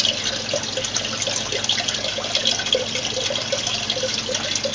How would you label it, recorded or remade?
recorded